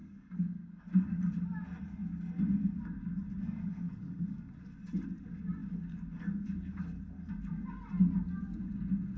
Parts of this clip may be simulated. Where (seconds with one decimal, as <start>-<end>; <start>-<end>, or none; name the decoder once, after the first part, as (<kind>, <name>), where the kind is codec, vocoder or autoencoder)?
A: 0.0-0.8 (codec, SNAC); 3.6-4.5